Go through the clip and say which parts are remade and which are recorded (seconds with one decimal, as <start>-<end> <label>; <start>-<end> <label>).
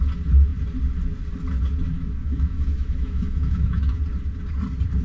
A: 0.0-2.2 recorded; 2.2-4.0 remade; 4.0-5.0 recorded